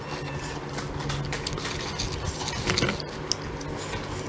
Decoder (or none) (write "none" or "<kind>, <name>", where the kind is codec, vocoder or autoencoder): none